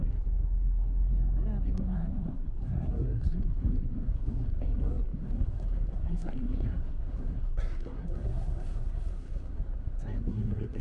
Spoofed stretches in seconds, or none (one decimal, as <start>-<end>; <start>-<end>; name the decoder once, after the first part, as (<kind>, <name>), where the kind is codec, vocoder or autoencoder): 0.0-1.1 (codec, SNAC); 1.6-10.8